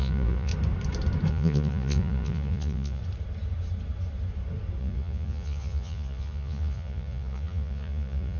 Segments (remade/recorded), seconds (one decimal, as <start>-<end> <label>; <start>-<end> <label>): 0.0-0.5 remade; 0.5-1.3 recorded; 1.3-3.0 remade; 3.0-4.8 recorded; 4.8-8.4 remade